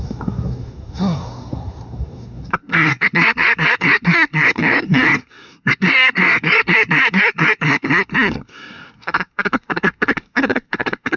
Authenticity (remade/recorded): remade